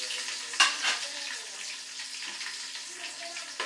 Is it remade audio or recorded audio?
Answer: recorded